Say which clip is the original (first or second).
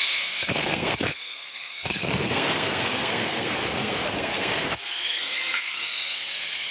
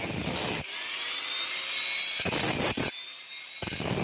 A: second